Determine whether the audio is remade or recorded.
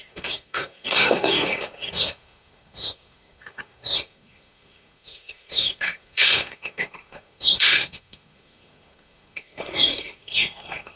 remade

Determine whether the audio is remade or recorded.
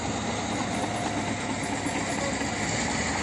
recorded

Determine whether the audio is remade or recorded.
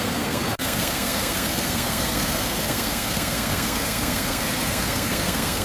remade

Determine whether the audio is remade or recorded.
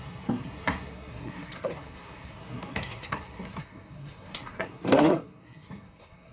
remade